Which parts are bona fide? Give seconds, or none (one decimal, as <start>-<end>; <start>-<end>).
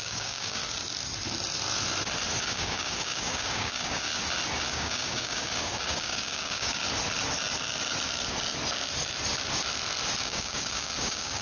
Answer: 0.6-2.4; 4.1-4.7; 6.8-10.2